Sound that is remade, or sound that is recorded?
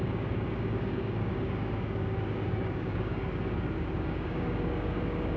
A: remade